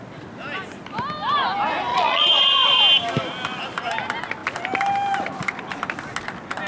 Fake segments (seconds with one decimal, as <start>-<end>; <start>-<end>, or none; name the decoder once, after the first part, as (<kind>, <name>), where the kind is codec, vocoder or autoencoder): 1.9-2.8 (vocoder, Vocos)